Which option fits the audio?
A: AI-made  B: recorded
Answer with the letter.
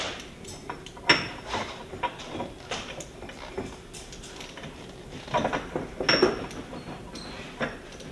B